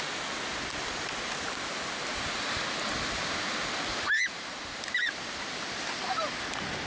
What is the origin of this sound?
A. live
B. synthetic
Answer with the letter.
A